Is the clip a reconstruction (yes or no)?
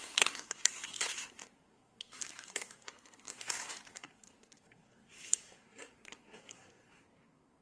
yes